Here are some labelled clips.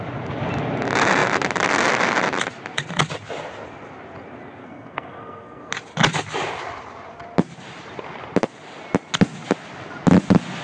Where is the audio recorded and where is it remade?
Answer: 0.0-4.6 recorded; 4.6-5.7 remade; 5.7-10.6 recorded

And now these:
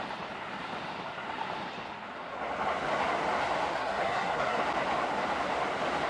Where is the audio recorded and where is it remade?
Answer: 0.0-3.7 recorded; 3.7-4.6 remade; 4.6-6.1 recorded

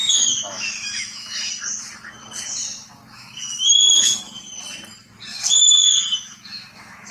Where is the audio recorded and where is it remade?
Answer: 0.0-1.5 remade; 1.5-2.6 recorded; 2.6-4.4 remade; 4.4-5.3 recorded; 5.3-7.1 remade

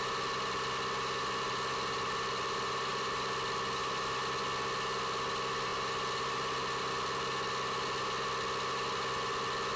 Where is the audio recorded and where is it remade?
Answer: 0.0-9.8 recorded

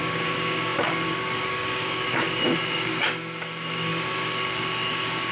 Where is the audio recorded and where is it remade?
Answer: 0.0-5.3 remade

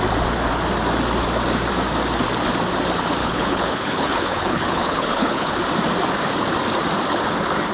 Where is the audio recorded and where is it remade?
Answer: 0.0-3.2 recorded; 3.2-5.6 remade; 5.6-7.7 recorded

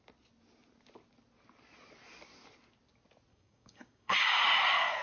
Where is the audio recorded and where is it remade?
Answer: 0.0-3.3 recorded; 3.3-4.4 remade; 4.4-5.0 recorded

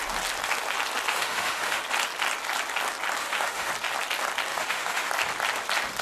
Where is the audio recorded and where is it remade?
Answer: 0.0-1.1 recorded; 1.1-1.8 remade; 1.8-3.2 recorded; 3.2-3.7 remade; 3.7-4.5 recorded; 4.5-5.1 remade; 5.1-6.0 recorded